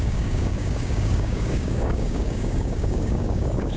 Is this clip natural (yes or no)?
no